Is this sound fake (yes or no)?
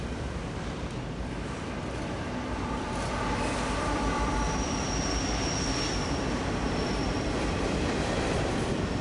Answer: yes